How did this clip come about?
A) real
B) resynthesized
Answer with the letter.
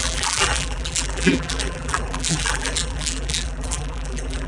B